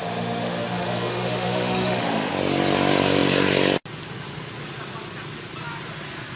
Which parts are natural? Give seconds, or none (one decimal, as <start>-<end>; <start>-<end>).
2.3-6.4